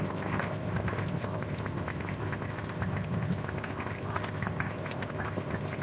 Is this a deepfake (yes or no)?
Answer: yes